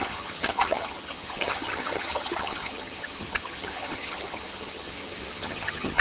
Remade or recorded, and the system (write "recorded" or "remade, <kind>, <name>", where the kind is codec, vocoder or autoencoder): remade, vocoder, HiFi-GAN